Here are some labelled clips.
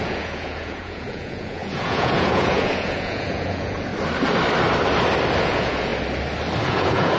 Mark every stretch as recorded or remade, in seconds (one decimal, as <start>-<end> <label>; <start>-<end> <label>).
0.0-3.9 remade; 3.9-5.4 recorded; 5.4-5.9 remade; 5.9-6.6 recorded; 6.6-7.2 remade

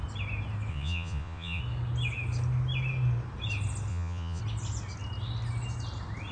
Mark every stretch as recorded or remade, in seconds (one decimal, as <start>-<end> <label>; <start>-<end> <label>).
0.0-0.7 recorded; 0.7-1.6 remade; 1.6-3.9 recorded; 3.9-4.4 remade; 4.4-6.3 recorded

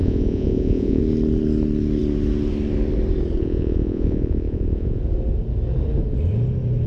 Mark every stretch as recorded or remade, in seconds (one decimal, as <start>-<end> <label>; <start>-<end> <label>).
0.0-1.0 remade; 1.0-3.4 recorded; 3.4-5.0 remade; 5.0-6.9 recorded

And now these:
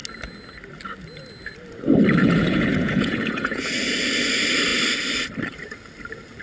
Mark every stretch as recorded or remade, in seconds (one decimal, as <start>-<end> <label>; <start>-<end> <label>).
0.0-2.2 recorded; 2.2-3.7 remade; 3.7-6.4 recorded

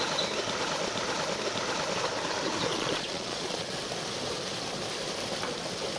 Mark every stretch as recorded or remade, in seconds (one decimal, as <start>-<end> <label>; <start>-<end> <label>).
0.0-2.7 recorded; 2.7-3.7 remade; 3.7-6.0 recorded